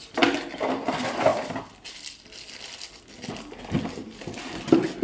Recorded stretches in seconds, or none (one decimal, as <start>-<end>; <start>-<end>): 0.0-5.0